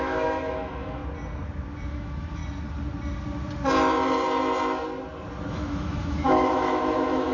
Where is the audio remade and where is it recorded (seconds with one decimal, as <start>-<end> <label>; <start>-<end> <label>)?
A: 0.0-1.0 remade; 1.0-1.9 recorded; 1.9-2.4 remade; 2.4-5.5 recorded; 5.5-7.3 remade